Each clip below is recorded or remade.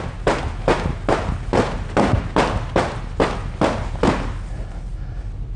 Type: recorded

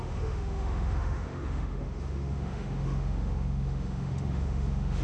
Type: remade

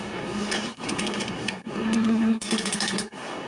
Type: remade